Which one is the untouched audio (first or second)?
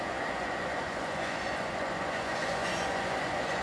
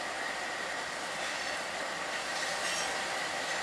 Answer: second